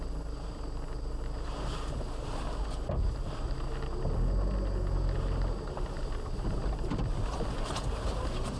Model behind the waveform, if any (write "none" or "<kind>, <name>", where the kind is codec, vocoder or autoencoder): none